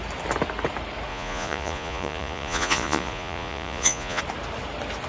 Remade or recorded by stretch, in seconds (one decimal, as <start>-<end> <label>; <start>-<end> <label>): 0.0-1.1 recorded; 1.1-4.2 remade; 4.2-5.1 recorded